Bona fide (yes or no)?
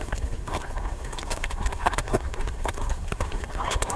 no